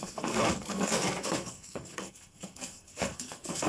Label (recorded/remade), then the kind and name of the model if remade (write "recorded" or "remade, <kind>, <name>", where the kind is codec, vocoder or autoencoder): remade, codec, SNAC